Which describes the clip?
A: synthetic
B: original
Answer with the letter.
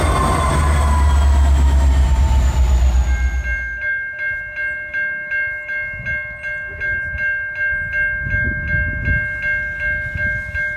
B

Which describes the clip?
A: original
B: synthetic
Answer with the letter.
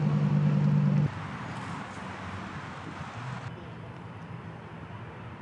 A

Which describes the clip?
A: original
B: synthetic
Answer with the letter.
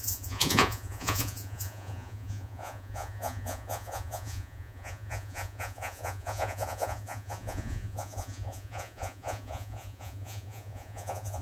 B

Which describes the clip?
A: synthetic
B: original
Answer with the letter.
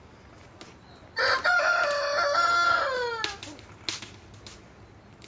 B